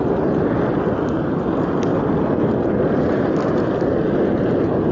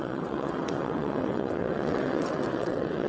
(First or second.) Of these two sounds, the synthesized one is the second